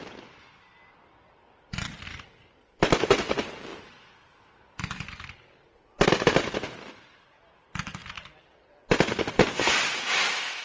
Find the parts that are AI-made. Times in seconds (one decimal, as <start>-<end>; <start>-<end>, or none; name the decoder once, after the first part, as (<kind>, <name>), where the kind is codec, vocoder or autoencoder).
none